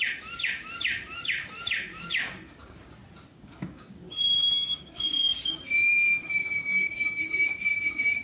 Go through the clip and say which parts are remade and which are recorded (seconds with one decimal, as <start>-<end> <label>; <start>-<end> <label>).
0.0-1.9 recorded; 1.9-2.8 remade; 2.8-3.3 recorded; 3.3-5.6 remade; 5.6-6.1 recorded; 6.1-7.2 remade; 7.2-8.2 recorded